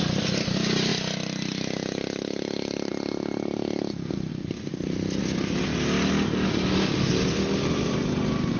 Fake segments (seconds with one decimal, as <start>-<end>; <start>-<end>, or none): none